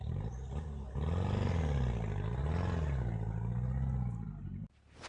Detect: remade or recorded recorded